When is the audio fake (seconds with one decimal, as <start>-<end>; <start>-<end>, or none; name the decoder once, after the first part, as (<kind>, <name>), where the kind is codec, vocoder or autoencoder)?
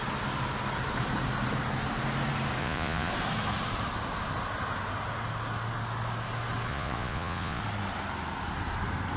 2.6-3.1 (vocoder, Vocos); 6.7-7.6